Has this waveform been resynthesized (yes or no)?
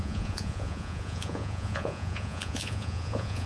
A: yes